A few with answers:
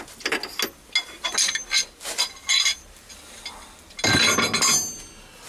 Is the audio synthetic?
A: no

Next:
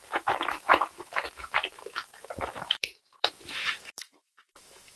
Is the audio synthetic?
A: yes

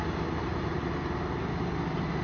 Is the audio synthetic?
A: no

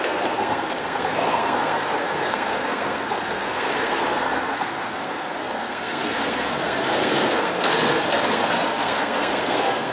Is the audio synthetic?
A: yes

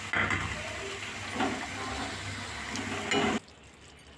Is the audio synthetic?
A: no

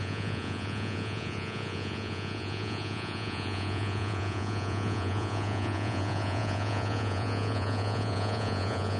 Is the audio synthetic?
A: yes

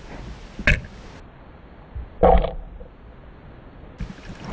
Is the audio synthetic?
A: no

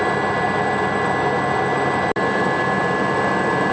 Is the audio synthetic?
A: no